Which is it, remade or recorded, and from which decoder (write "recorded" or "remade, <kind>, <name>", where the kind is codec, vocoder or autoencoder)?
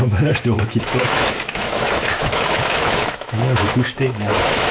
remade, autoencoder, DAC-VAE